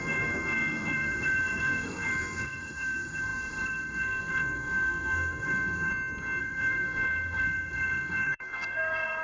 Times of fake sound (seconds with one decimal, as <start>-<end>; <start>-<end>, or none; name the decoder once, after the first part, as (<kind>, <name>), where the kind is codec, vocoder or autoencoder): 0.0-5.9 (codec, SNAC); 6.4-9.2